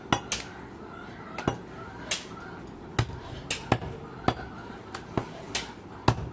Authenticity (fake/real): real